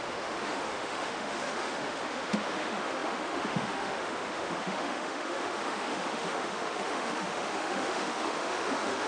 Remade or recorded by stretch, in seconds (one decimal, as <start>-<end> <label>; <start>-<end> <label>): 0.0-9.1 remade